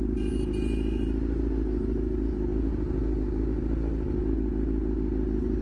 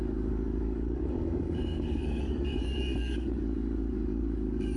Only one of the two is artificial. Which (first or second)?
second